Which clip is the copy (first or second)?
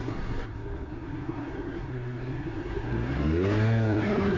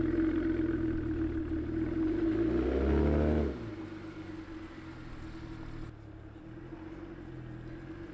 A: first